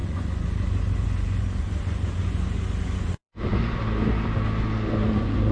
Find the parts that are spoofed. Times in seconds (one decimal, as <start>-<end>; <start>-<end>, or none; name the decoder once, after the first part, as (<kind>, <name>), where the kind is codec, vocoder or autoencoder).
0.0-3.5 (vocoder, Vocos); 5.1-5.5

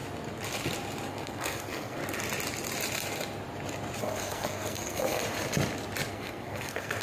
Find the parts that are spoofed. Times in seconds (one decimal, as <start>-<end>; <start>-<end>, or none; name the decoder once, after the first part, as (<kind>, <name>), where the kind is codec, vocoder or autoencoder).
1.1-2.0 (codec, SNAC); 4.0-5.2; 6.1-7.0

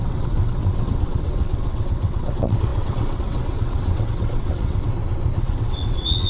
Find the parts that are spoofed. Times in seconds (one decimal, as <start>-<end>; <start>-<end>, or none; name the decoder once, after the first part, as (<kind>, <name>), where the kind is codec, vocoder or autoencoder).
0.0-4.9 (vocoder, WaveNeXt); 5.4-6.3

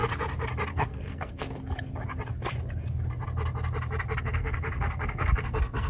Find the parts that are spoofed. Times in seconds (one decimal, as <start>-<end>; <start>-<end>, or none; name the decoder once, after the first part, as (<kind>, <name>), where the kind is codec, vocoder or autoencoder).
0.7-1.6 (codec, SNAC); 4.2-5.9

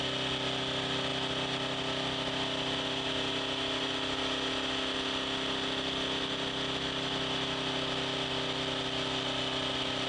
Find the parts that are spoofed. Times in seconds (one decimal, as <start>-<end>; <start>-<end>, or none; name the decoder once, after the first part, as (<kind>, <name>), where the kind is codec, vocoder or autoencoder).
none